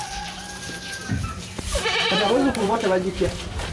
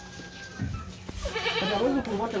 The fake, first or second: first